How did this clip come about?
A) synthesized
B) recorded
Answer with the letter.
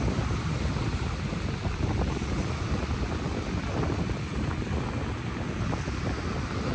B